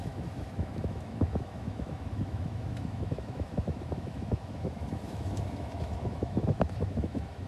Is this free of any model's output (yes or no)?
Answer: no